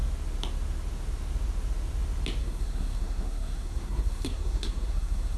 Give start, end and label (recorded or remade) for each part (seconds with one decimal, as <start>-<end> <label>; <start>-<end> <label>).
0.0-2.4 recorded; 2.4-5.4 remade